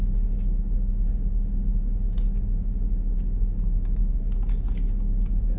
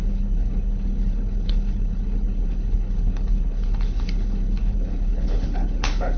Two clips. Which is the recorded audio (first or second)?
first